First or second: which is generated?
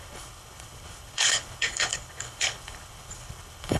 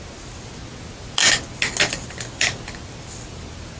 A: first